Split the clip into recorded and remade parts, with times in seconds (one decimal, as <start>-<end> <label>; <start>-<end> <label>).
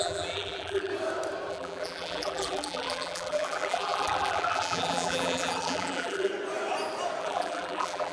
0.0-0.9 remade; 0.9-1.5 recorded; 1.5-6.3 remade; 6.3-7.2 recorded; 7.2-8.1 remade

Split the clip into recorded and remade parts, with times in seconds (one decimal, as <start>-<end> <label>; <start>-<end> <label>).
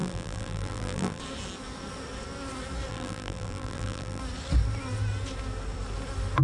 0.0-1.2 remade; 1.2-2.9 recorded; 2.9-4.2 remade; 4.2-6.4 recorded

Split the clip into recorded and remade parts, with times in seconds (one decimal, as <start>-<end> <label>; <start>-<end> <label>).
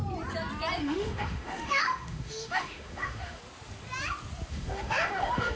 0.0-0.8 recorded; 0.8-3.4 remade; 3.4-4.5 recorded; 4.5-5.6 remade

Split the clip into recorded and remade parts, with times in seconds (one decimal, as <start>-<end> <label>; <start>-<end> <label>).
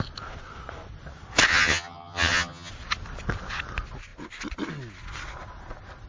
0.0-1.5 recorded; 1.5-2.7 remade; 2.7-6.1 recorded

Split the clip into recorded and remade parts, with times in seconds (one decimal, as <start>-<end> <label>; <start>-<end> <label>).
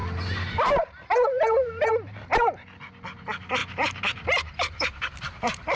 0.0-1.9 remade; 1.9-3.6 recorded; 3.6-5.8 remade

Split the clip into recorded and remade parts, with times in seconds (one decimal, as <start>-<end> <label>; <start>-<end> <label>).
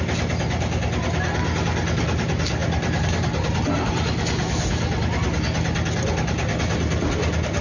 0.0-7.6 recorded